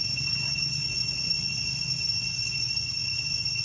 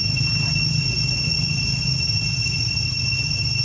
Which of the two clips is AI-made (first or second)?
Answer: first